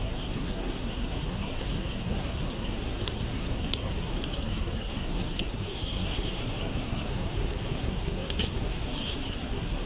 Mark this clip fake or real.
fake